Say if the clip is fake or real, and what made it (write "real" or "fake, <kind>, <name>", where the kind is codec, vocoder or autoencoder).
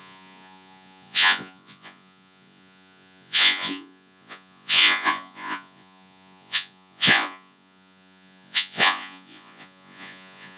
fake, vocoder, Vocos